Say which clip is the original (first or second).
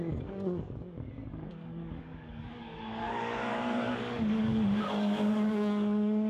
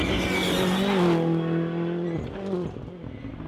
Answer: second